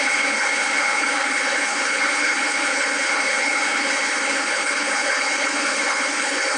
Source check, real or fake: fake